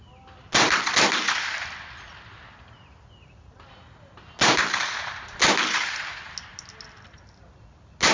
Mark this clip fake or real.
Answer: real